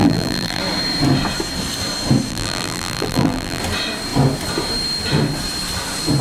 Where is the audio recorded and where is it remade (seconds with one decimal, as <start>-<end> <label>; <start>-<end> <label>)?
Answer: 0.0-0.6 remade; 0.6-2.3 recorded; 2.3-3.6 remade; 3.6-6.2 recorded